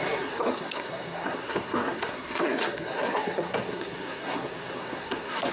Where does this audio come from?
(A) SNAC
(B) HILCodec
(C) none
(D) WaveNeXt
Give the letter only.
A